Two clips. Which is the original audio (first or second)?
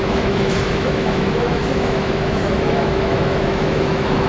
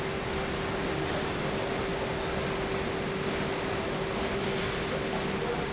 second